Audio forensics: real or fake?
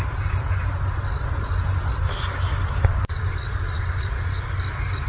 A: real